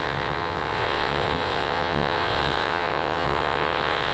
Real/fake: fake